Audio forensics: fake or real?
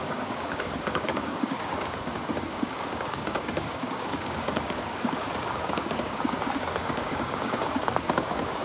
fake